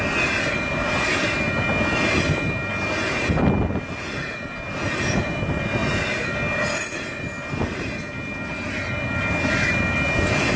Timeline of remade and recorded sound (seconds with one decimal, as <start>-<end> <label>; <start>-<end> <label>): 0.0-10.6 recorded